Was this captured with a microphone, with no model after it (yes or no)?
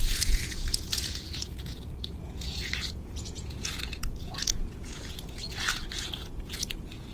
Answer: no